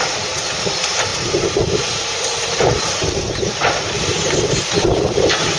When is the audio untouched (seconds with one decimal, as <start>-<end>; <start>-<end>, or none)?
none